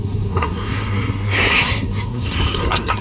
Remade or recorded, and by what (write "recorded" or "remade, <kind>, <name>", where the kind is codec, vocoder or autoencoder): remade, codec, SNAC